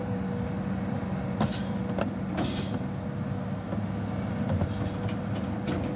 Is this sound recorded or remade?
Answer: recorded